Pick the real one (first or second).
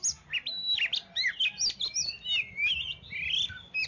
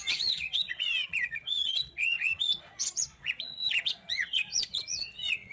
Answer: first